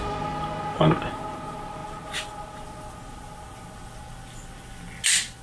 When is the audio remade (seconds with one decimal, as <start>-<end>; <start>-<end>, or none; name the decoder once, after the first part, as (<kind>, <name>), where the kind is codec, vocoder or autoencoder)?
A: none